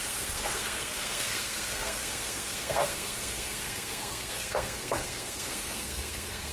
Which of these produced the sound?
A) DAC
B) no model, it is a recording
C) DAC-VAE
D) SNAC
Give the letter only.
D